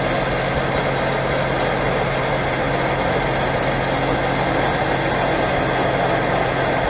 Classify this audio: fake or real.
real